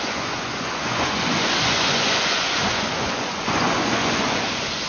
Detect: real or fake fake